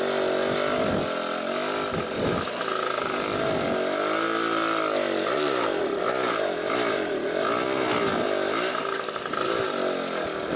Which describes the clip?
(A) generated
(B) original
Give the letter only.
B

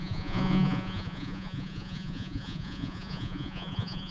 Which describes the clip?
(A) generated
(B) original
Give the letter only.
A